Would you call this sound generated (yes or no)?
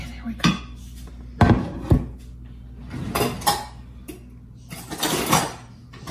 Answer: no